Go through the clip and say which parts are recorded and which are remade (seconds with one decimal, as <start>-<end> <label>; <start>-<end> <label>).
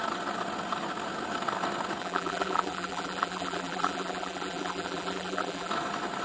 0.0-2.0 recorded; 2.0-5.7 remade; 5.7-6.2 recorded